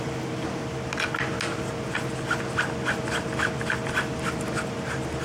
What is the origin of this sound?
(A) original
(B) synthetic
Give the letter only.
A